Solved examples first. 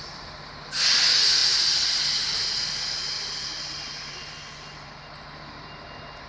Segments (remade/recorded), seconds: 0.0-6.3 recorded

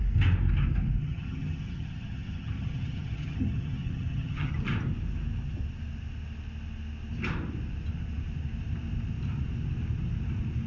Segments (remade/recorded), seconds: 0.0-1.0 recorded; 1.0-4.5 remade; 4.5-10.7 recorded

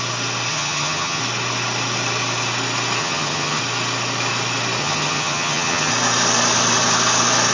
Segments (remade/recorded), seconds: 0.0-0.5 recorded; 0.5-1.2 remade; 1.2-3.0 recorded; 3.0-3.6 remade; 3.6-4.8 recorded; 4.8-5.9 remade; 5.9-7.5 recorded

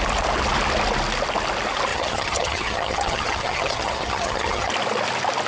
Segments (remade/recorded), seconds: 0.0-1.9 recorded; 1.9-4.7 remade; 4.7-5.5 recorded